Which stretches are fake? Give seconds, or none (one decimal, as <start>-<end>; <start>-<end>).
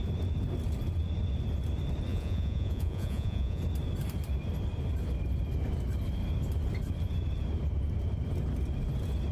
2.1-3.6